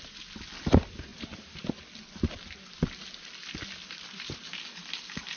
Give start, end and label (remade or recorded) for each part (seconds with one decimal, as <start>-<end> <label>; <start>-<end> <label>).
0.0-1.1 recorded; 1.1-1.7 remade; 1.7-5.4 recorded